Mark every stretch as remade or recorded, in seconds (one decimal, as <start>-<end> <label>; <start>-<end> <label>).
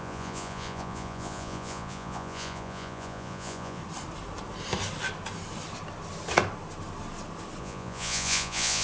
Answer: 0.0-3.8 remade; 3.8-7.6 recorded; 7.6-8.8 remade